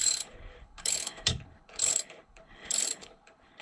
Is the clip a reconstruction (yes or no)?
yes